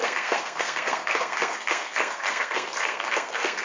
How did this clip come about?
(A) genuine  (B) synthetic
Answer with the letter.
B